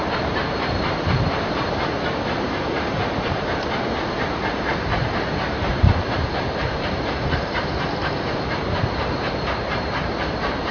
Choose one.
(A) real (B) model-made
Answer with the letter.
B